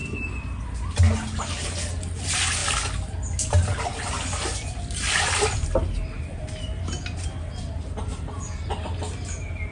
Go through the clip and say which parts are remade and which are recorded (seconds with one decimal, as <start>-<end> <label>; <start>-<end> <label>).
0.0-9.7 recorded